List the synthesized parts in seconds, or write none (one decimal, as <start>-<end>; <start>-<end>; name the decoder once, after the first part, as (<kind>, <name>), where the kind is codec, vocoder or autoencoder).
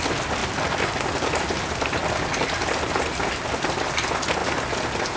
none